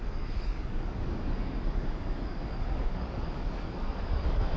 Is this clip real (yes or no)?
no